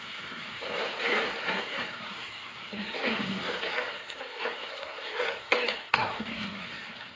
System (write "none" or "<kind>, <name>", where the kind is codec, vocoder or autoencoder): codec, SNAC